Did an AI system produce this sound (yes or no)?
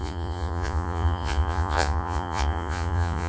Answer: yes